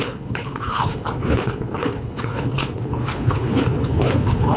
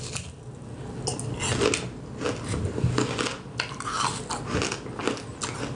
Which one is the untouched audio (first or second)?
second